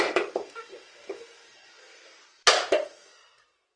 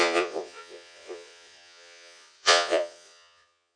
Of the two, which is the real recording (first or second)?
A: first